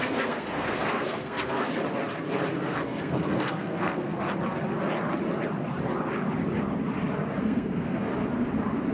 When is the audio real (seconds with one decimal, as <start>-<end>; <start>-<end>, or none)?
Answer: 1.7-2.5; 4.1-7.4; 8.1-8.9